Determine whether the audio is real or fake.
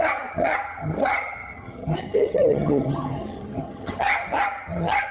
fake